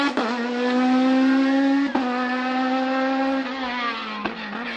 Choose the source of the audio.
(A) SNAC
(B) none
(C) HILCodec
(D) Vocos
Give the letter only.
B